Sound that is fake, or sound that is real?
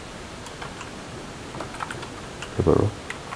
fake